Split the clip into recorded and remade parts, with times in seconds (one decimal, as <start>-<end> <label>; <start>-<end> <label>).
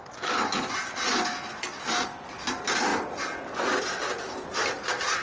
0.0-5.2 recorded